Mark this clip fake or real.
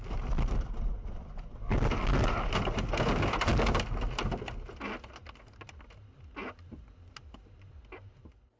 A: real